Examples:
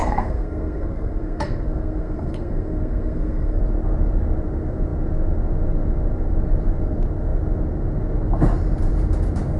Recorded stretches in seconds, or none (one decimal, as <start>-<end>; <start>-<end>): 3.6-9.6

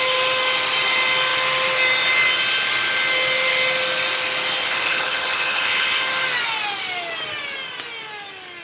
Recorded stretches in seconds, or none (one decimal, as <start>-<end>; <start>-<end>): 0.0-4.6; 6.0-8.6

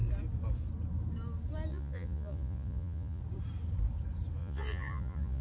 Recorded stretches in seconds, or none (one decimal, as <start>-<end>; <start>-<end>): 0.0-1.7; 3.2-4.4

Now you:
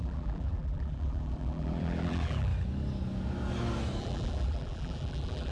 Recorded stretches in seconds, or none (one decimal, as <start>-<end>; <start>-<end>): 2.5-4.0

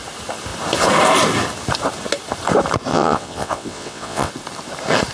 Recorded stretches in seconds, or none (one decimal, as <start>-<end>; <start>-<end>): 0.0-2.9; 4.3-5.1

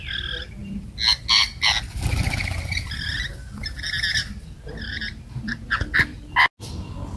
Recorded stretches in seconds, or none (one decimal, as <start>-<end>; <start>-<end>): 0.0-4.1; 5.8-7.2

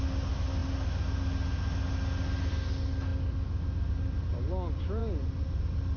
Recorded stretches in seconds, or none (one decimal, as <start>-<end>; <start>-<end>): 0.0-6.0